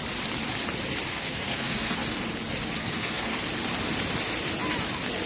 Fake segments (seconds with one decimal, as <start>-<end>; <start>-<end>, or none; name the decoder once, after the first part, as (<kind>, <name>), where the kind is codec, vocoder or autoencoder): 1.1-2.0 (codec, SNAC); 2.8-3.4

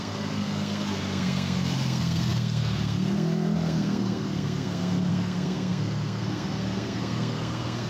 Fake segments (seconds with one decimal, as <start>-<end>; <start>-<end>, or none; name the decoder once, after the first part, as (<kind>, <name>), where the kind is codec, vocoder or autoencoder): 0.0-7.9 (codec, SNAC)

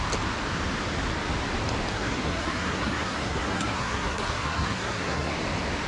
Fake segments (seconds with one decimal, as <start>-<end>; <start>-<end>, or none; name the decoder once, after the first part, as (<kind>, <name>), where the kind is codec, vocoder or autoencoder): 1.9-5.3 (codec, SNAC)

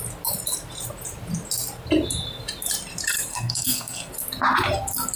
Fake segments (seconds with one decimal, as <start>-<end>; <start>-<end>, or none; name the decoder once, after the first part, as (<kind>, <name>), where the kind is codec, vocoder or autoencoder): 3.3-4.1 (codec, SNAC)

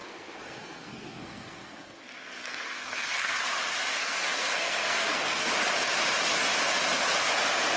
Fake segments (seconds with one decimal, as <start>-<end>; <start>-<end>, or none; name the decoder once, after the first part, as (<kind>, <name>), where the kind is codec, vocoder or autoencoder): 0.0-3.4 (codec, SNAC); 3.9-5.5

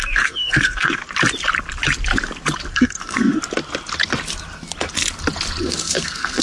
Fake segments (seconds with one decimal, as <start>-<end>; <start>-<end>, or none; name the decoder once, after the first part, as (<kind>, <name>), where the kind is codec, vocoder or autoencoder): 0.0-1.0 (codec, SNAC); 2.7-3.4; 5.6-6.4